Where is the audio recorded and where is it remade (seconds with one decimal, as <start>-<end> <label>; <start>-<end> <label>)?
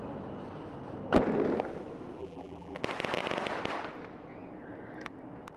0.0-2.2 recorded; 2.2-2.8 remade; 2.8-5.6 recorded